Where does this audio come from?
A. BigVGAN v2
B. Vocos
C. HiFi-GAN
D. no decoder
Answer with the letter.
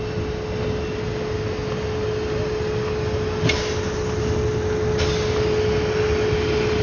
D